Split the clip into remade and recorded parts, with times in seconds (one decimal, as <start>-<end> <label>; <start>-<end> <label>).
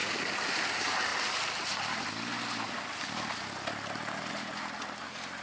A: 0.0-5.4 recorded